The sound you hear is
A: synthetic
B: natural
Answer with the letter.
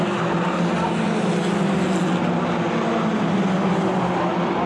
B